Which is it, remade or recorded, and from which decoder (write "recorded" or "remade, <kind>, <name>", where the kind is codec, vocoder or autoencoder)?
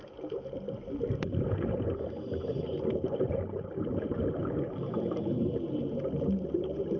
recorded